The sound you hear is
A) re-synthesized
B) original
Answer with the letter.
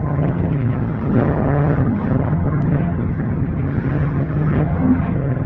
A